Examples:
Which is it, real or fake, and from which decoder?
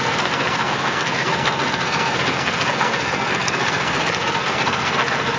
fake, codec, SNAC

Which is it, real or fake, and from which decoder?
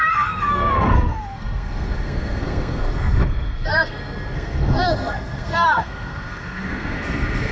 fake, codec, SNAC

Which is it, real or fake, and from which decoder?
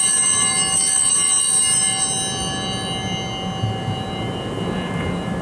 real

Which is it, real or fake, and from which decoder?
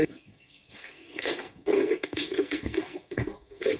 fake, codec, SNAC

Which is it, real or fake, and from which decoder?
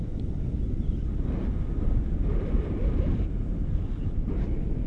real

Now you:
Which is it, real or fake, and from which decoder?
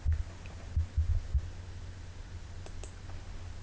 real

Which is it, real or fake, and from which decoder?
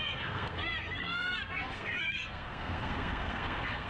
fake, codec, SNAC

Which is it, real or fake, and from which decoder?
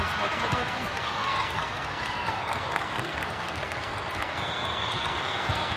fake, codec, SNAC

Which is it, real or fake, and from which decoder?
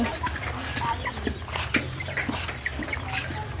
real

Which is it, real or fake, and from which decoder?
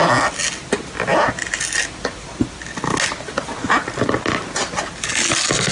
real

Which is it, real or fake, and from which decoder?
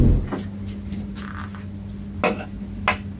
real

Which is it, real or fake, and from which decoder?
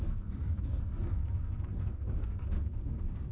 fake, codec, SNAC